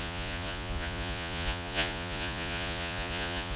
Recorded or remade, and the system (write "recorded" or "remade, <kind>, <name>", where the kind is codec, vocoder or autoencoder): remade, vocoder, Vocos